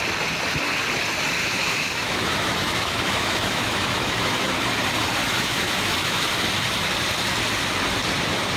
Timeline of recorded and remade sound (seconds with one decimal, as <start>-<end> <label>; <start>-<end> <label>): 0.0-1.4 recorded; 1.4-4.5 remade; 4.5-5.2 recorded; 5.2-6.3 remade; 6.3-8.6 recorded